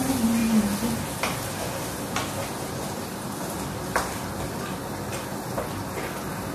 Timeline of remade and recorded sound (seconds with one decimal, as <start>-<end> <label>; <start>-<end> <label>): 0.0-6.5 recorded